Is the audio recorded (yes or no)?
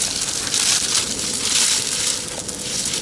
yes